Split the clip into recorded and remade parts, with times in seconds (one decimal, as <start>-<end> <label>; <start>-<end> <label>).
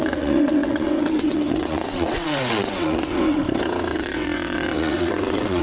0.0-3.4 remade; 3.4-3.9 recorded; 3.9-5.6 remade